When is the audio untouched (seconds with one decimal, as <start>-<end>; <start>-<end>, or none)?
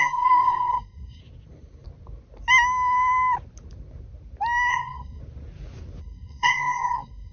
1.2-4.7; 5.2-6.0